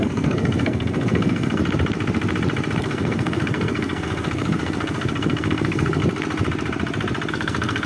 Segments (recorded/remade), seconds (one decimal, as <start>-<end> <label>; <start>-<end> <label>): 0.0-1.6 remade; 1.6-2.8 recorded; 2.8-6.0 remade; 6.0-7.3 recorded; 7.3-7.9 remade